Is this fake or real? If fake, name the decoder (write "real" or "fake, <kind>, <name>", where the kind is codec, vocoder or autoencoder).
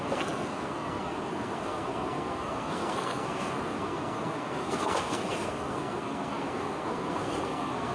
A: fake, codec, SNAC